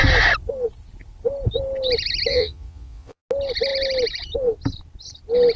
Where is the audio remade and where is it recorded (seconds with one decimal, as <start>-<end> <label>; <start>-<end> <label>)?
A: 0.0-2.3 recorded; 2.3-3.2 remade; 3.2-5.6 recorded